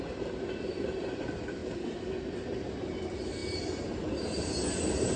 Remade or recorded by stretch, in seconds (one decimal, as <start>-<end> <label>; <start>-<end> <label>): 0.0-5.2 recorded